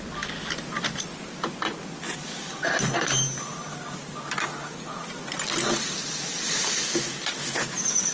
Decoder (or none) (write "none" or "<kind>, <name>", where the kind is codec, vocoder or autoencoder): none